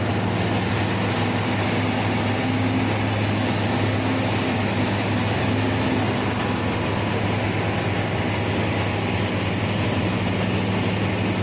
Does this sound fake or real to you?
real